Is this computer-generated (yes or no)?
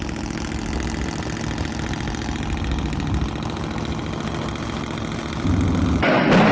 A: no